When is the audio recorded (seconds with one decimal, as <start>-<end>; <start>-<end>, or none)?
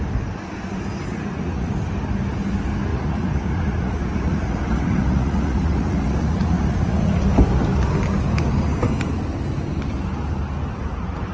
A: 0.0-1.1; 1.7-2.9; 7.2-11.3